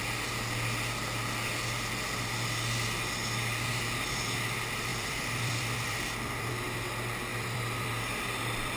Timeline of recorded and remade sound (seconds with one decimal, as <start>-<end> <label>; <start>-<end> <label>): 0.0-4.9 recorded; 4.9-6.5 remade; 6.5-7.3 recorded; 7.3-8.8 remade